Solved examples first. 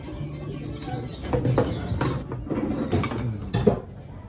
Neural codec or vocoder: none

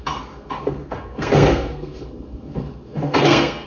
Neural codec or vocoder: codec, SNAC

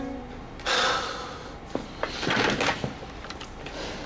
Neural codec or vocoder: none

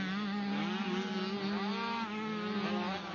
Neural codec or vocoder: none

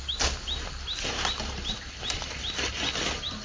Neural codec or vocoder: none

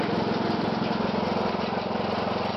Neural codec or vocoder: none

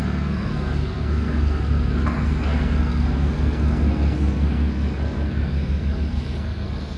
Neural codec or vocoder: codec, SNAC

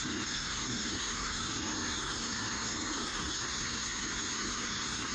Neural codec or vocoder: codec, SNAC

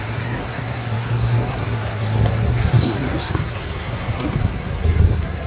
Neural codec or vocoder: codec, SNAC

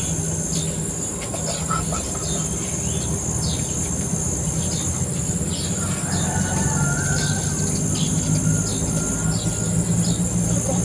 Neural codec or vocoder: none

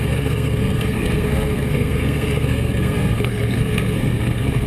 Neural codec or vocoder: codec, SNAC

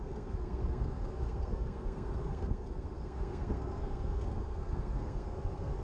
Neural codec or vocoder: codec, SNAC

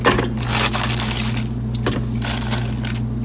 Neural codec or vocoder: none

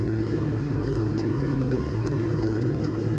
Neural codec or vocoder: codec, SNAC